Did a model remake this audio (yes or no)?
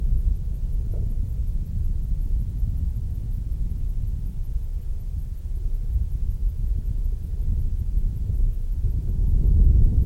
no